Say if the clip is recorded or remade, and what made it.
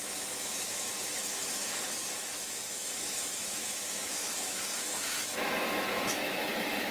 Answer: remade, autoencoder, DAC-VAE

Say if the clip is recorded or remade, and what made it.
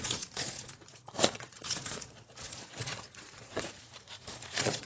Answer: remade, vocoder, Vocos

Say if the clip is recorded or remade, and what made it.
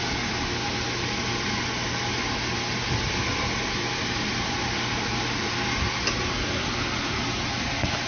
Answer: recorded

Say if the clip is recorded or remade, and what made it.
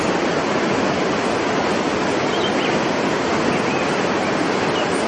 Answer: recorded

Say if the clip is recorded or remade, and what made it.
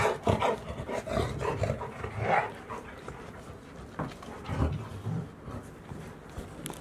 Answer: recorded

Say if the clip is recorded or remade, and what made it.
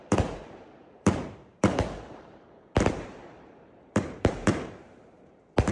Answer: remade, vocoder, BigVGAN v2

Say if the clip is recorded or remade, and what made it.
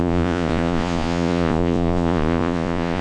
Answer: remade, vocoder, Vocos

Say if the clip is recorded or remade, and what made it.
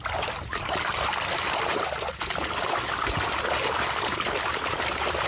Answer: remade, vocoder, BigVGAN v2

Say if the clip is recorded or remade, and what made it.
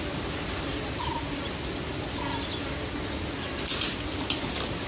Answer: recorded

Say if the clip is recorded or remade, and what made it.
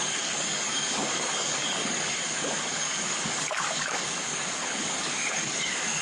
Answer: remade, codec, DAC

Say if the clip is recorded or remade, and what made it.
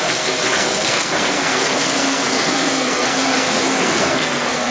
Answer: remade, codec, SNAC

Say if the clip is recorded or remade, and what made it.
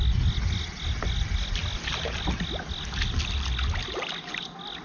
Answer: recorded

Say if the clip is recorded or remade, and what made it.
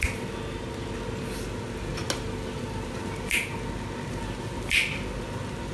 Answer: recorded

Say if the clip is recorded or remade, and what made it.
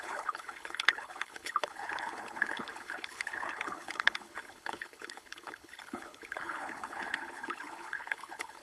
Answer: remade, codec, HILCodec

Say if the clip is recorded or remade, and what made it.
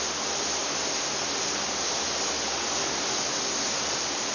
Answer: recorded